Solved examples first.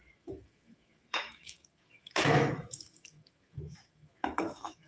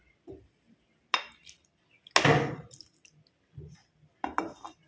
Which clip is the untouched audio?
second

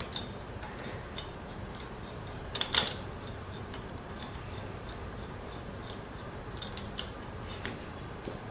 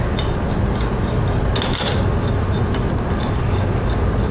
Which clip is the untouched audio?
second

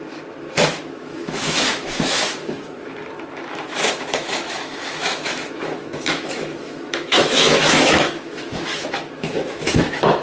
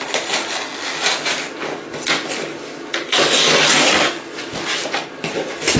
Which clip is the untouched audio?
second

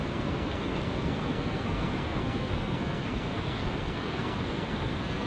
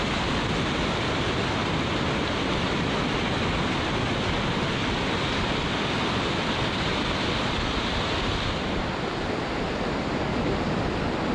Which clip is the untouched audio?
second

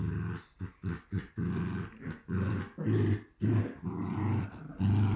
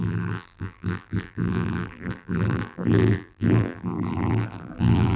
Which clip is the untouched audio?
first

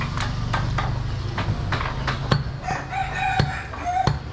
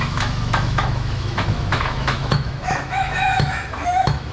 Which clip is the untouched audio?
first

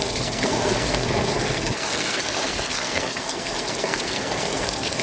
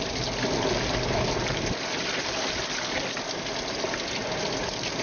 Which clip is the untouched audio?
second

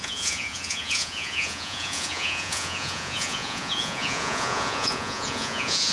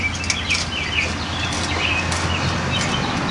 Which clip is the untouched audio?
second